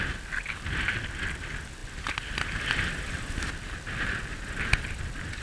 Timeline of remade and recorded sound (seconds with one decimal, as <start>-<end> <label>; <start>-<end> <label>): 0.0-1.8 recorded; 1.8-5.0 remade; 5.0-5.4 recorded